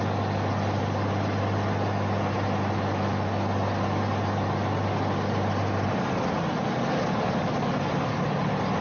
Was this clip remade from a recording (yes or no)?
no